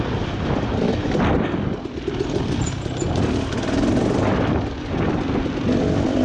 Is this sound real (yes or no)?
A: yes